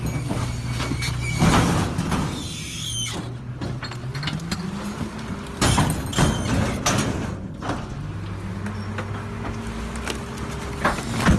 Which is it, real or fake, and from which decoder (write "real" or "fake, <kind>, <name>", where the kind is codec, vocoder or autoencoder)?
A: real